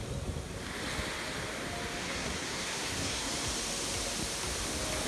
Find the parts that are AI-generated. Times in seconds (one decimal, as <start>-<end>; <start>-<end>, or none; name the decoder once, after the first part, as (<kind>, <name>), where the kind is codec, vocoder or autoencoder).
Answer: 2.0-3.3 (codec, SNAC)